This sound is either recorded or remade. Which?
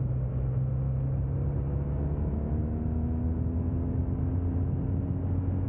recorded